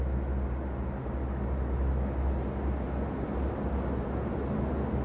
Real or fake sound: real